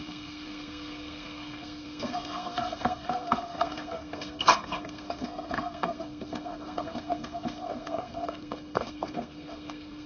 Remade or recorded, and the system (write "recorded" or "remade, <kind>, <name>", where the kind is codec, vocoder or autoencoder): remade, codec, SNAC